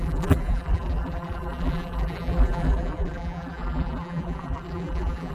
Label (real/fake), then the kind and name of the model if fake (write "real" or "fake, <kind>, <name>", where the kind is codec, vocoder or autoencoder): fake, vocoder, BigVGAN v2